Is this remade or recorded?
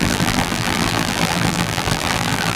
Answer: remade